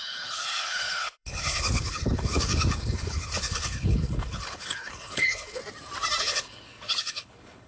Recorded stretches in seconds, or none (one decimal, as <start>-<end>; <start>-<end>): 5.6-6.2